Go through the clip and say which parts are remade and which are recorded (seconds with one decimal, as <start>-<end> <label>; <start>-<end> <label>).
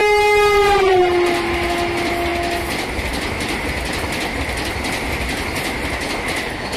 0.0-1.5 remade; 1.5-6.8 recorded